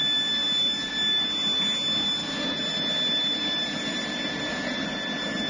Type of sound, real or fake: real